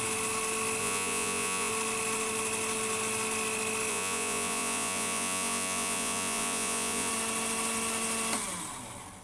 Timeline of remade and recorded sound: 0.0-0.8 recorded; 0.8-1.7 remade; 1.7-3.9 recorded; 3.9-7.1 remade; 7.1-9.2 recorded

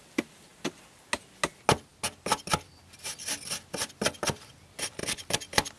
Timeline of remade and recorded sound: 0.0-5.8 recorded